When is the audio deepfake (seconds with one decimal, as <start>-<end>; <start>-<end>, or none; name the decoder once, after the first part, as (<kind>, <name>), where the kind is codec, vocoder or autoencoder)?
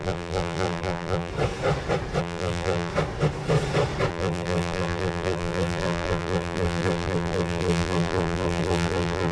0.0-1.3 (vocoder, BigVGAN v2); 2.2-2.9; 4.1-9.3